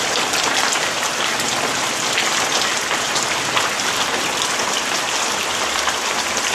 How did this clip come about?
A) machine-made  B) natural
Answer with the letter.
B